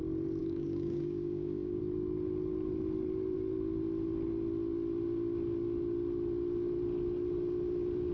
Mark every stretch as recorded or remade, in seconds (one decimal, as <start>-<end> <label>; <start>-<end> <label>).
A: 0.0-0.4 recorded; 0.4-1.8 remade; 1.8-8.1 recorded